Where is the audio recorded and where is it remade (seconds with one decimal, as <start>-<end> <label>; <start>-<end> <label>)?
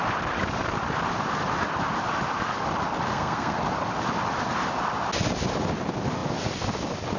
0.0-3.1 recorded; 3.1-3.6 remade; 3.6-7.2 recorded